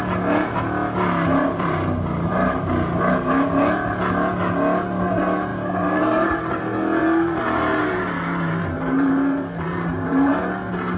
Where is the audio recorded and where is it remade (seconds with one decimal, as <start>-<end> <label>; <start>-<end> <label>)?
0.0-1.4 recorded; 1.4-2.7 remade; 2.7-5.5 recorded; 5.5-6.5 remade; 6.5-7.0 recorded; 7.0-10.3 remade; 10.3-11.0 recorded